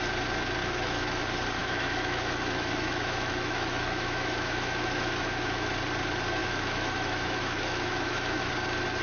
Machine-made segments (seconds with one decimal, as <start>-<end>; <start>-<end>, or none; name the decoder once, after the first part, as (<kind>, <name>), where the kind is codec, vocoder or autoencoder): 0.6-1.2 (autoencoder, DAC-VAE); 1.6-5.7; 6.4-8.5